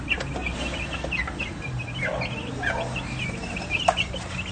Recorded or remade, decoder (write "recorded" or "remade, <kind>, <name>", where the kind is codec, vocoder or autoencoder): recorded